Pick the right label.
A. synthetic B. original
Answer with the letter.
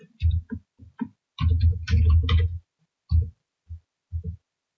B